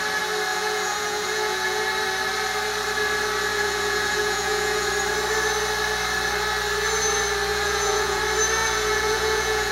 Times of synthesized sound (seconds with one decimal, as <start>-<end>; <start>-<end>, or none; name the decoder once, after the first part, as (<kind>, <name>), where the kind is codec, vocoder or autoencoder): 0.5-1.8 (vocoder, Vocos); 3.5-4.9; 7.5-8.2; 8.6-9.7